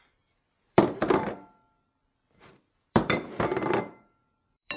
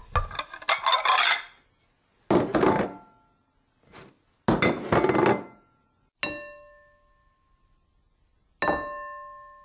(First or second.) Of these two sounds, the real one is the second